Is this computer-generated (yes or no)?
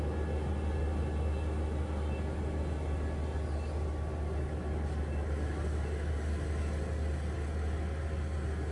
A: no